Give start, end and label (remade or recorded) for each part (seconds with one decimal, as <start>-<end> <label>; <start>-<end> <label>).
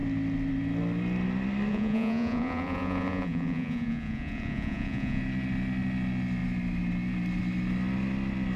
0.0-1.7 recorded; 1.7-5.2 remade; 5.2-8.6 recorded